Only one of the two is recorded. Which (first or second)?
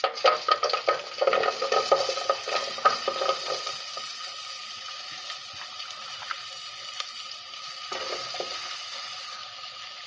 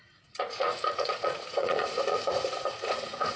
first